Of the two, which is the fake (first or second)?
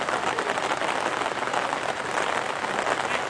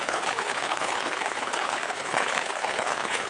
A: second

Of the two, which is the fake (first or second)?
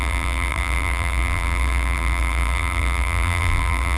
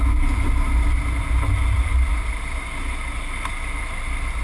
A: first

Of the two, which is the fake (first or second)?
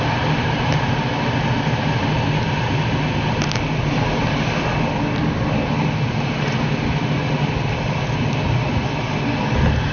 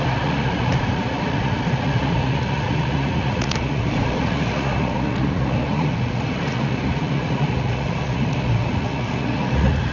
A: second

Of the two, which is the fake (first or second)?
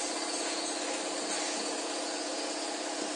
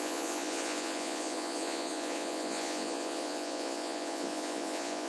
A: second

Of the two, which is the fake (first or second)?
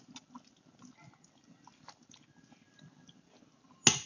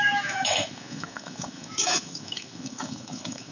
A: second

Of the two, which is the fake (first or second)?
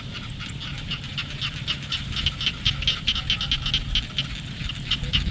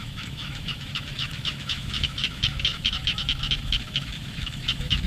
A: second